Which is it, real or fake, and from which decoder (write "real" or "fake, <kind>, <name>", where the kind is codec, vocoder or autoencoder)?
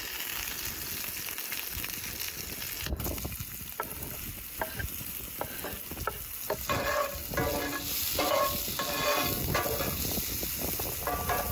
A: real